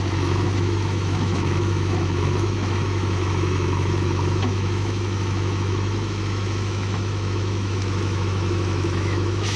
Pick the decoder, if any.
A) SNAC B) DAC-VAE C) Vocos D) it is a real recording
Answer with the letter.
B